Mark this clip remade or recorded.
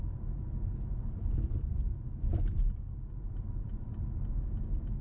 recorded